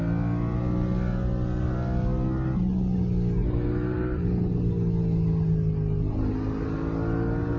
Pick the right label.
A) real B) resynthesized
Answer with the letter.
A